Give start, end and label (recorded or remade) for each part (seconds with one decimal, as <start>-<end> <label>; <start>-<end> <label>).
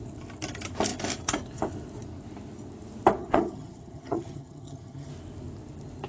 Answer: 0.0-3.2 recorded; 3.2-5.1 remade; 5.1-6.1 recorded